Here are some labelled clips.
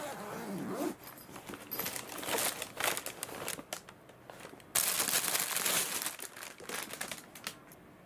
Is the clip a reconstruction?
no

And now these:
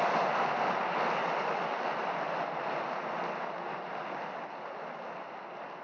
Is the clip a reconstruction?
no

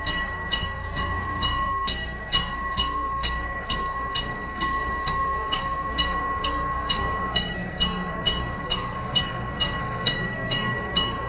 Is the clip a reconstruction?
yes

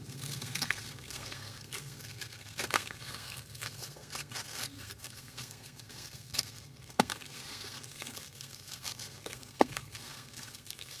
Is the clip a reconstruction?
yes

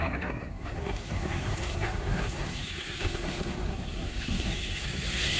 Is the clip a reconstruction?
yes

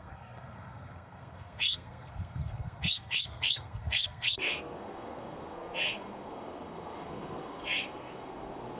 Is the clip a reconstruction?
yes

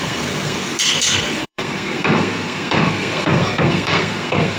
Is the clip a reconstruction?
yes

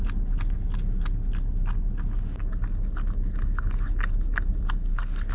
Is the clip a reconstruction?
no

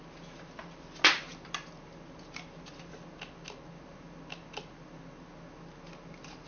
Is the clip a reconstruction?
no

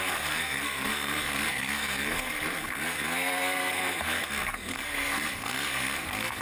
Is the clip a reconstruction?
yes